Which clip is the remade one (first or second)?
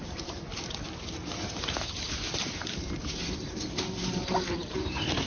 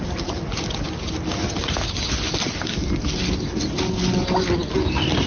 first